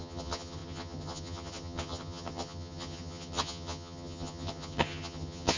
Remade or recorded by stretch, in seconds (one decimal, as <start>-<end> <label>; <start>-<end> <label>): 0.0-5.6 remade